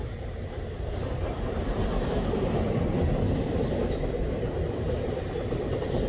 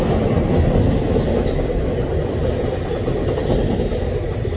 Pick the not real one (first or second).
first